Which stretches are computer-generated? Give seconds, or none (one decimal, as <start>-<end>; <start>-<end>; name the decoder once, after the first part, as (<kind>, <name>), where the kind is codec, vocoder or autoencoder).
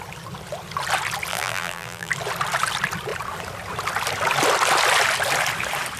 1.3-2.1 (vocoder, BigVGAN v2)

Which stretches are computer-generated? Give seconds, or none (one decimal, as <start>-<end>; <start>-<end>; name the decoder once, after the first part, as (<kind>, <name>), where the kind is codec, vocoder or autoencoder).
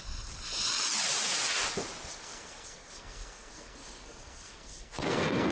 2.1-5.5 (codec, SNAC)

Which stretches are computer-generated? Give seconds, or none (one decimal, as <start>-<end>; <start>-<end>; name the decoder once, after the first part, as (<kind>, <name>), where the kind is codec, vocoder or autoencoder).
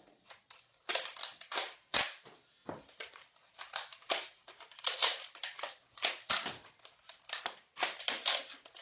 1.5-6.3 (vocoder, BigVGAN v2); 7.1-8.8